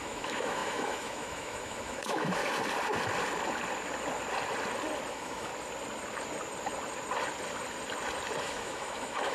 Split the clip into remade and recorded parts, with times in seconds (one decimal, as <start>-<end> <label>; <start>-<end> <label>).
0.0-2.4 remade; 2.4-5.1 recorded; 5.1-5.5 remade; 5.5-8.4 recorded; 8.4-9.3 remade